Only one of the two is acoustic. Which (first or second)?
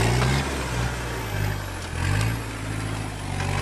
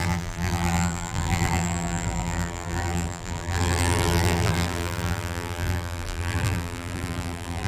first